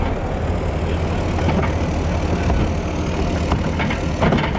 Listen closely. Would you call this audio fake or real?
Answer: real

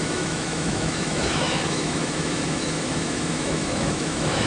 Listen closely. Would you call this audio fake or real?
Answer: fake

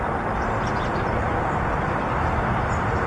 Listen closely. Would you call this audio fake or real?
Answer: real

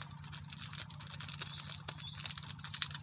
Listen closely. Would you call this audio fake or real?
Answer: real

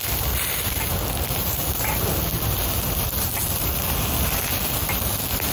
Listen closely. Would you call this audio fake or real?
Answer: real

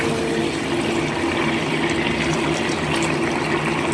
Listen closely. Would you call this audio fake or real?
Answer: real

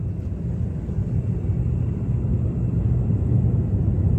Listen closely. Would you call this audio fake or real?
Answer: real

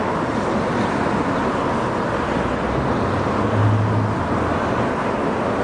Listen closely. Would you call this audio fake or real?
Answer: real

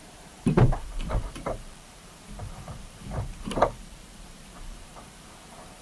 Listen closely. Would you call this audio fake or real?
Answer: fake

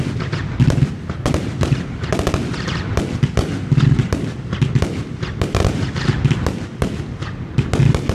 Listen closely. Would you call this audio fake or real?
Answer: real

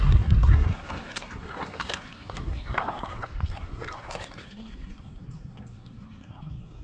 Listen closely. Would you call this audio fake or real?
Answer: fake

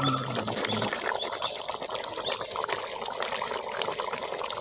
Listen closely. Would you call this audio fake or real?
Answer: real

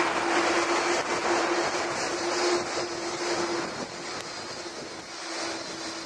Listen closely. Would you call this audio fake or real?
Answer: real